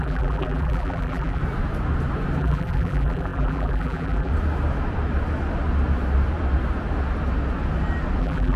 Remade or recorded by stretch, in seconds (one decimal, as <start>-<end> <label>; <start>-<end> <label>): 0.0-1.4 remade; 1.4-2.4 recorded; 2.4-4.3 remade; 4.3-8.2 recorded; 8.2-8.6 remade